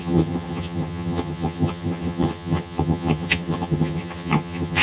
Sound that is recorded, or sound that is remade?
remade